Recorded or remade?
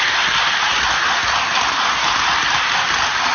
recorded